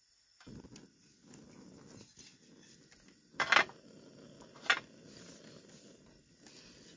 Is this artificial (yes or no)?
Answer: no